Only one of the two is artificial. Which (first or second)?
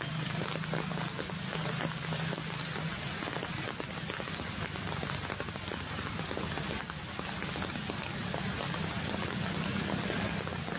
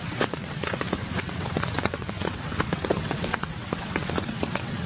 second